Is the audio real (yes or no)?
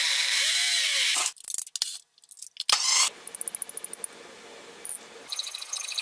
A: yes